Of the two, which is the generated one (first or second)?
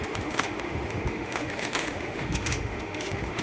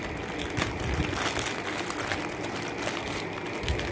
first